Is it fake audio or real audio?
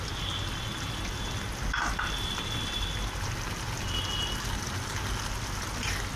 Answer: real